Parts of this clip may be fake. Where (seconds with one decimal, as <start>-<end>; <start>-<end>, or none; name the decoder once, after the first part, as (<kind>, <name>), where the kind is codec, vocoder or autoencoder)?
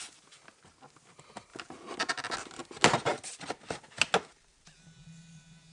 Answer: none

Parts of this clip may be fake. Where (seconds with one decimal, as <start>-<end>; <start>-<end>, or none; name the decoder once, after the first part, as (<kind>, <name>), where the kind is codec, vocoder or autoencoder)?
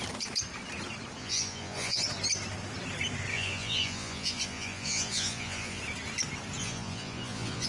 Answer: 1.2-2.0 (vocoder, Vocos); 3.3-5.8; 6.6-7.7